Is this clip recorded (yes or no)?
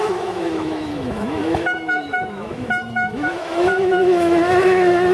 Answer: no